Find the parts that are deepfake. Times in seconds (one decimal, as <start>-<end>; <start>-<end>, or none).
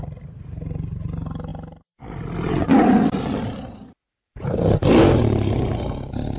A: none